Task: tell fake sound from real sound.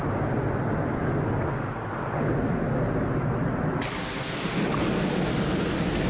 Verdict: real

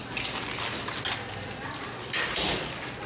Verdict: real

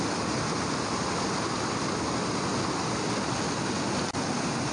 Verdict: real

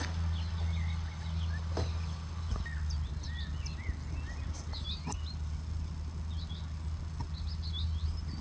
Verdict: real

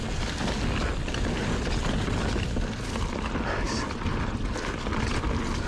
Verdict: real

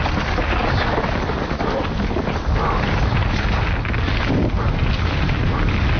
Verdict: real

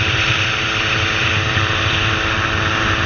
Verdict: real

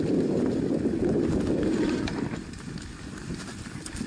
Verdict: real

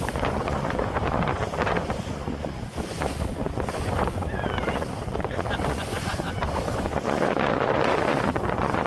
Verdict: fake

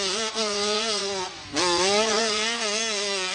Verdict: fake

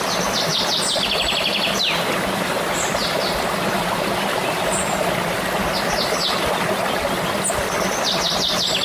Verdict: real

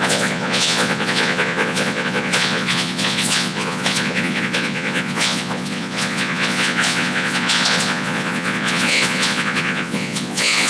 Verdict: fake